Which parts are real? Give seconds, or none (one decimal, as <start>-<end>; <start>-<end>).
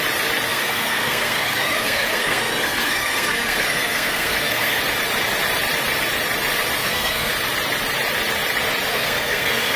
0.0-0.5; 4.8-6.8; 7.3-8.9